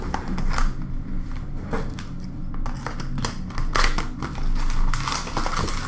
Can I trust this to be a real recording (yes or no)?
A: yes